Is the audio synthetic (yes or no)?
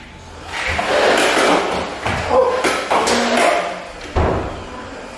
no